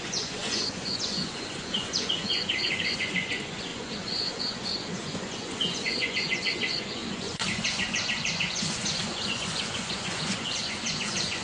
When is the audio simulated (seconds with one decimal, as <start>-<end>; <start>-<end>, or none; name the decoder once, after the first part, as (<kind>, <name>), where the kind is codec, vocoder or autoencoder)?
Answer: 0.0-11.4 (vocoder, Vocos)